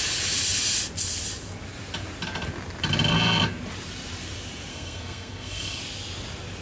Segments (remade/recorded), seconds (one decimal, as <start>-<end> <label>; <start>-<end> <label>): 0.0-4.7 recorded; 4.7-5.8 remade; 5.8-6.6 recorded